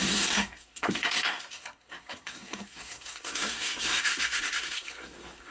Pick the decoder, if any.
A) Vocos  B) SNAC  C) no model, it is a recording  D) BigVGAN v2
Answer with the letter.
B